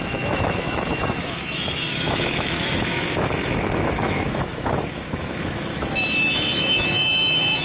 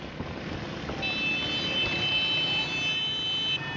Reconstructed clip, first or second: first